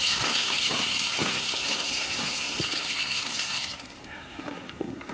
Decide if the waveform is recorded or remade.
remade